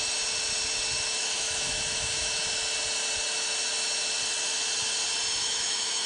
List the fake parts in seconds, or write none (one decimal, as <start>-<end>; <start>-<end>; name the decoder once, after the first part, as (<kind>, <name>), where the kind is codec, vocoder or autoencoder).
1.2-2.4 (autoencoder, DAC-VAE); 5.4-6.1

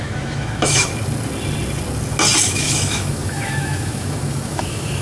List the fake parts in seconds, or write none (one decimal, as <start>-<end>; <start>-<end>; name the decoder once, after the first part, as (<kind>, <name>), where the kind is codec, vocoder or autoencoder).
0.0-0.9 (autoencoder, DAC-VAE); 2.4-5.0